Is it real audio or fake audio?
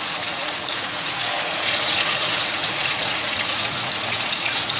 fake